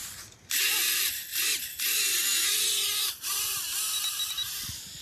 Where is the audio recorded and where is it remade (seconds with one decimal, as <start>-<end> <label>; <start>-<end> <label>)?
0.0-5.0 recorded